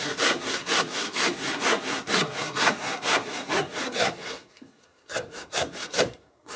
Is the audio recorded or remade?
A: remade